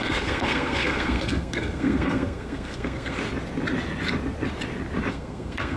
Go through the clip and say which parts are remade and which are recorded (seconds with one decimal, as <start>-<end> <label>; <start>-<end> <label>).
0.0-3.2 remade; 3.2-5.1 recorded; 5.1-5.8 remade